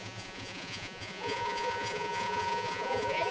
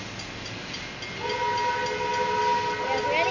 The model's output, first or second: first